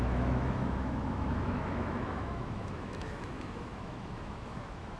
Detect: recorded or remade remade